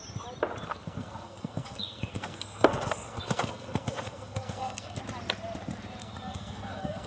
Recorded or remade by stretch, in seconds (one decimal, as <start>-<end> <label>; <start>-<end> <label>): 0.0-0.7 recorded; 0.7-5.0 remade; 5.0-6.0 recorded; 6.0-7.1 remade